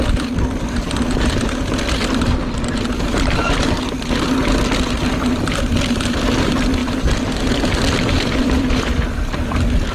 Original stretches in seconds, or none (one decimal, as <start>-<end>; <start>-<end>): 0.0-9.9